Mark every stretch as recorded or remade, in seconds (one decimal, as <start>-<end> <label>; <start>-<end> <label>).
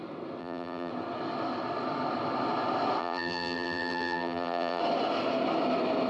0.0-0.4 recorded; 0.4-0.9 remade; 0.9-3.0 recorded; 3.0-4.8 remade; 4.8-6.1 recorded